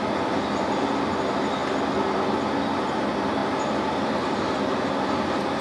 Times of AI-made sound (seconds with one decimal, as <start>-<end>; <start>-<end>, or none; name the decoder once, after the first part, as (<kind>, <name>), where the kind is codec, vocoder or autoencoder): none